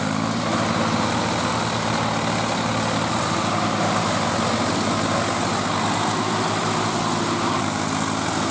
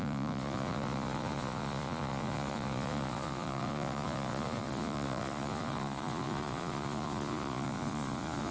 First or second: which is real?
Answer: first